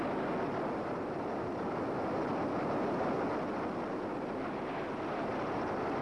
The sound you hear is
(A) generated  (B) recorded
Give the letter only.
B